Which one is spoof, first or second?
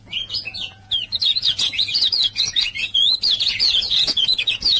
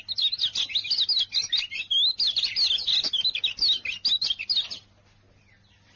first